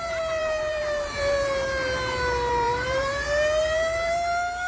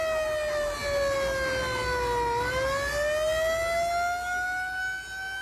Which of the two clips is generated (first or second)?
first